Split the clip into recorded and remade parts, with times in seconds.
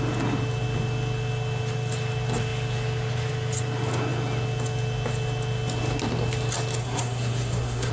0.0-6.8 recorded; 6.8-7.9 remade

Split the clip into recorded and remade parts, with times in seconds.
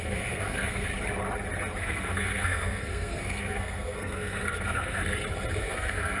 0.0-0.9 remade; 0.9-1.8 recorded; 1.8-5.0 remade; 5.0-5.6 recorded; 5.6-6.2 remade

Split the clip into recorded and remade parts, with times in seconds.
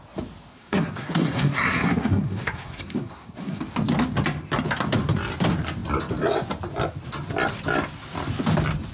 0.0-0.5 recorded; 0.5-3.6 remade; 3.6-8.9 recorded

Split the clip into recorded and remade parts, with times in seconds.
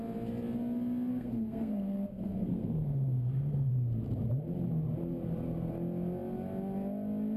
0.0-1.1 recorded; 1.1-3.7 remade; 3.7-7.4 recorded